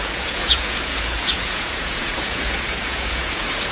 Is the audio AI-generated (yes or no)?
yes